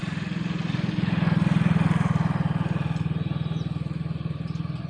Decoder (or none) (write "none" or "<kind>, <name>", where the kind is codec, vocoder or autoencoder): none